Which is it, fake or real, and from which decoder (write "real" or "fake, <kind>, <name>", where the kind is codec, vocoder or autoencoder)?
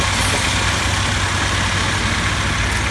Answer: real